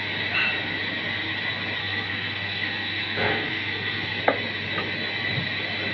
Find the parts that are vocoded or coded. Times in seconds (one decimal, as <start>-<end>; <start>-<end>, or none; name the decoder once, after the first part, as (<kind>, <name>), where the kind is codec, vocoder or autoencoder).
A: 1.8-4.2 (codec, SNAC)